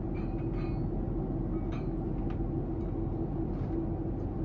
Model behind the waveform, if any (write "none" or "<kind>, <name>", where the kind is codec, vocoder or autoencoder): none